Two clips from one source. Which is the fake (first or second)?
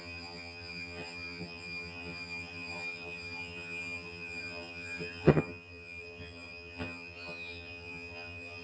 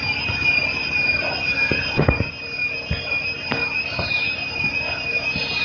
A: first